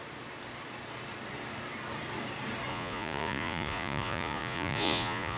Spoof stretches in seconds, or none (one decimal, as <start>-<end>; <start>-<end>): 2.7-5.4